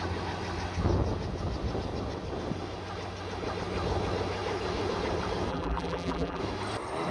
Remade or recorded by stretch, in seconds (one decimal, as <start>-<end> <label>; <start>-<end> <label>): 0.0-5.5 recorded; 5.5-6.4 remade; 6.4-7.1 recorded